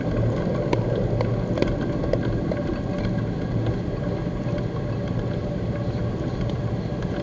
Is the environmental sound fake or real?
real